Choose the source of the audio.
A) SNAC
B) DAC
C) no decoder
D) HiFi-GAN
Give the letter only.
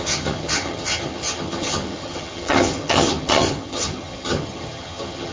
D